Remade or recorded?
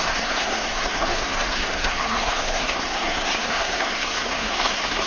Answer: remade